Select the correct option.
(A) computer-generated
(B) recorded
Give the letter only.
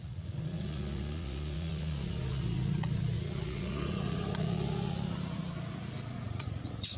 A